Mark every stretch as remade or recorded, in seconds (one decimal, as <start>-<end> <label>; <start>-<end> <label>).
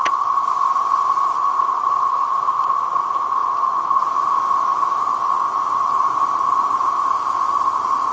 0.0-5.1 recorded; 5.1-5.9 remade; 5.9-8.1 recorded